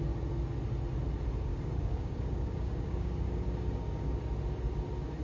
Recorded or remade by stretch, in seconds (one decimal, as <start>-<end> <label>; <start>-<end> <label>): 0.0-1.5 recorded; 1.5-4.2 remade; 4.2-5.2 recorded

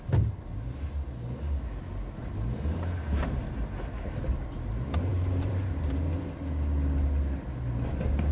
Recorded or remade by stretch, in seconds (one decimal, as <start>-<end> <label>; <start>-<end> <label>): 0.0-5.1 recorded; 5.1-6.2 remade; 6.2-8.3 recorded

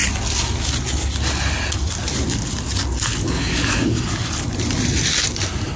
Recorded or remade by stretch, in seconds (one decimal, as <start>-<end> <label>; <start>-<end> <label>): 0.0-3.2 recorded; 3.2-4.1 remade; 4.1-5.8 recorded